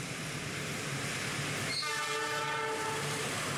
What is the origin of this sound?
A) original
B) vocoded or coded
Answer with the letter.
B